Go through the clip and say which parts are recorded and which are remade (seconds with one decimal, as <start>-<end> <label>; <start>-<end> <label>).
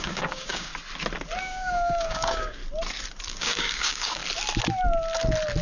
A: 0.0-0.7 remade; 0.7-1.4 recorded; 1.4-2.6 remade; 2.6-3.3 recorded; 3.3-4.2 remade; 4.2-5.6 recorded